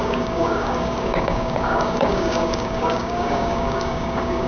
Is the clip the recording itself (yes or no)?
no